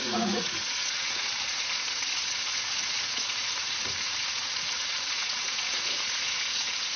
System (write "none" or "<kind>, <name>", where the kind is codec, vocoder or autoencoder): vocoder, Vocos